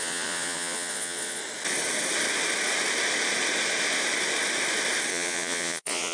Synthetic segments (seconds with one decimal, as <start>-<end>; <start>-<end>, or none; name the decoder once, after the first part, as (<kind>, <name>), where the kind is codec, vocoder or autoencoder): 0.0-1.4 (vocoder, Vocos); 5.1-6.1